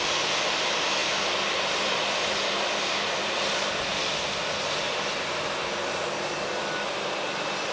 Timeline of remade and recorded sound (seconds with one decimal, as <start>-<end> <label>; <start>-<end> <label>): 0.0-7.7 recorded